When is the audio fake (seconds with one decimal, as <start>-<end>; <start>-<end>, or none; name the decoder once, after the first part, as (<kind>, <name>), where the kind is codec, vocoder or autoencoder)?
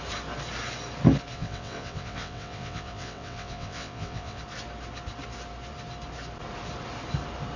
1.3-4.4 (vocoder, WaveNeXt)